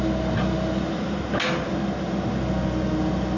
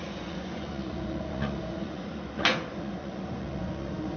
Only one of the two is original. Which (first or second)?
first